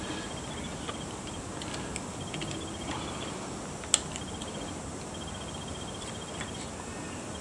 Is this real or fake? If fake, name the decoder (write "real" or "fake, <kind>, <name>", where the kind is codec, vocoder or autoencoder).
real